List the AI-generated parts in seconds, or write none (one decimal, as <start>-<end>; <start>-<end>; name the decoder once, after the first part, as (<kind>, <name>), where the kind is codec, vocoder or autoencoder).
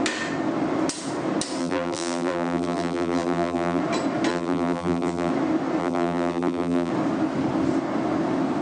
1.6-3.8 (vocoder, BigVGAN v2); 4.3-5.3; 5.8-6.9